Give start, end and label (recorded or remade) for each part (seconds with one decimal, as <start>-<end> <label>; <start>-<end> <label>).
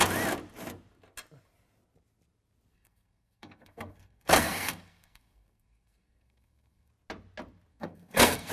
0.0-2.7 recorded; 2.7-6.9 remade; 6.9-7.7 recorded; 7.7-8.5 remade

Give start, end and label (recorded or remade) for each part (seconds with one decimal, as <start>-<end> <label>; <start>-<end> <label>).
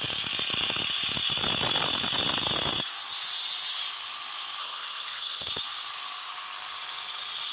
0.0-4.6 recorded; 4.6-5.5 remade; 5.5-7.5 recorded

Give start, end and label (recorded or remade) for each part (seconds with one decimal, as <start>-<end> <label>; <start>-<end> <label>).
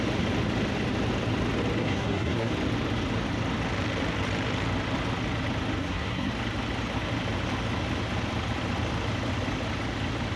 0.0-1.8 recorded; 1.8-2.5 remade; 2.5-5.8 recorded; 5.8-6.3 remade; 6.3-10.4 recorded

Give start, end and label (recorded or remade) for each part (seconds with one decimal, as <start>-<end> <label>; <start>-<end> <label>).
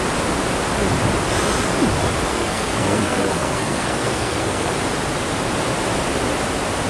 0.0-2.3 recorded; 2.3-4.7 remade; 4.7-6.9 recorded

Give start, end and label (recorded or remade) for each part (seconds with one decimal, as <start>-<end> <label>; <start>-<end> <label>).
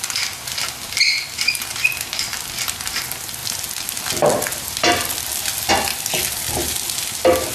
0.0-7.5 recorded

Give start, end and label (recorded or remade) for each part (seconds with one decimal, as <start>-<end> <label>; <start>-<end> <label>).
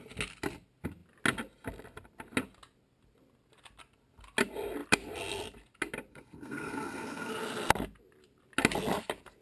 0.0-6.1 recorded; 6.1-7.3 remade; 7.3-9.4 recorded